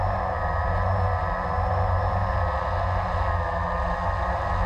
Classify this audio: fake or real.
real